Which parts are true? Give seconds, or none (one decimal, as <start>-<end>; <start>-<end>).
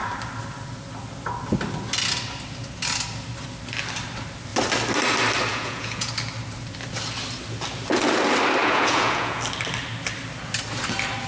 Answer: 0.0-5.5; 6.1-8.6; 9.4-11.3